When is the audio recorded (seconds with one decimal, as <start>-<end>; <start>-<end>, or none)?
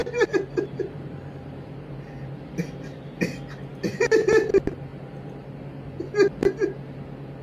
1.9-4.9; 5.5-7.4